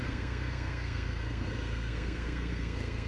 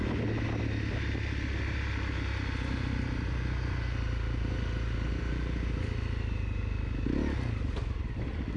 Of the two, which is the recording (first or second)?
second